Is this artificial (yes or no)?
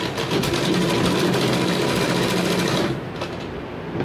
no